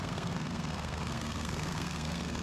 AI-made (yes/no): yes